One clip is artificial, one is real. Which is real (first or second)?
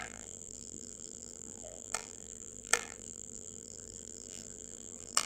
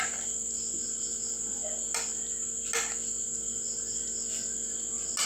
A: second